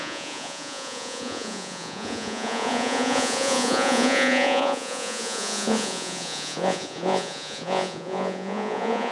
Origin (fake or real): fake